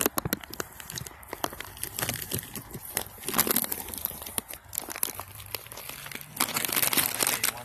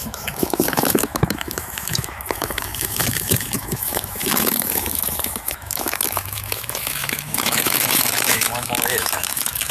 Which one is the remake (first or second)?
second